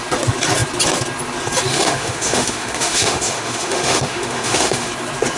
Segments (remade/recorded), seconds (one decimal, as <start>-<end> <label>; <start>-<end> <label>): 0.0-1.7 recorded; 1.7-4.9 remade; 4.9-5.4 recorded

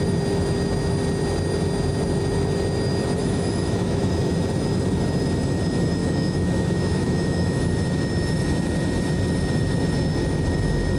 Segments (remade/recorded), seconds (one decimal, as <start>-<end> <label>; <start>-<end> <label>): 0.0-3.2 recorded; 3.2-4.1 remade; 4.1-6.0 recorded; 6.0-7.6 remade; 7.6-11.0 recorded

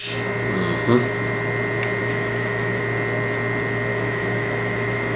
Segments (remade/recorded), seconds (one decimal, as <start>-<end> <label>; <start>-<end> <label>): 0.0-2.0 recorded; 2.0-2.8 remade; 2.8-3.9 recorded; 3.9-5.2 remade

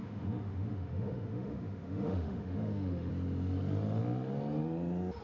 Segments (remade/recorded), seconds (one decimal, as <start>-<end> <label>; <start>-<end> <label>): 0.0-3.1 remade; 3.1-5.2 recorded